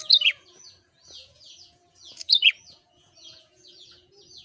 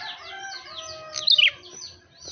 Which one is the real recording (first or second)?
second